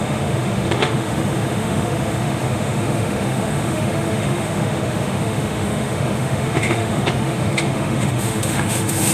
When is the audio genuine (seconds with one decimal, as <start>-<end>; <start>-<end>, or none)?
none